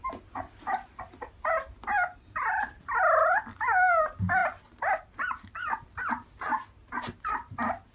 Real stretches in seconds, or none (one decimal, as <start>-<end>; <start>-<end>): 0.0-7.9